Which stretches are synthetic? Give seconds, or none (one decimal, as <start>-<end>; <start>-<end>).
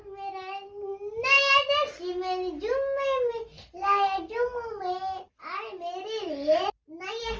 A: none